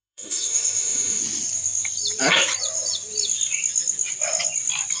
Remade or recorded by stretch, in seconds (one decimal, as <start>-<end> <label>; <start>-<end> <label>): 0.0-1.2 remade; 1.2-5.0 recorded